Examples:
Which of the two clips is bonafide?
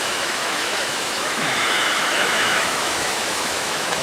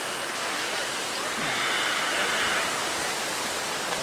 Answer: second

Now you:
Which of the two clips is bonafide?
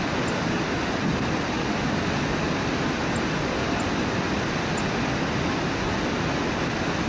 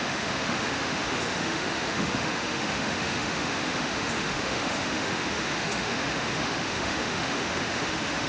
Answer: first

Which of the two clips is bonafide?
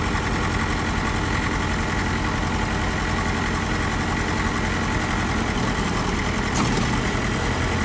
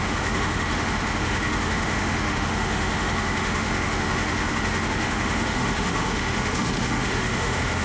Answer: first